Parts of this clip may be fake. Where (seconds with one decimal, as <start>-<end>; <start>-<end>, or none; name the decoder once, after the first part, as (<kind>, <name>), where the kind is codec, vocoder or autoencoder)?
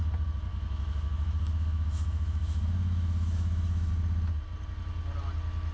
0.5-3.9 (autoencoder, DAC-VAE)